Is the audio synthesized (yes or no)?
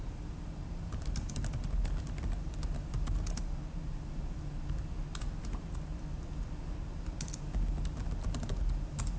no